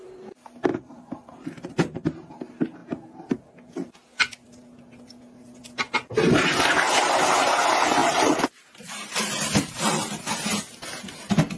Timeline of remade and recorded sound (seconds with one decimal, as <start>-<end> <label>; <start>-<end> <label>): 0.0-0.7 recorded; 0.7-2.3 remade; 2.3-8.0 recorded; 8.0-10.3 remade; 10.3-11.6 recorded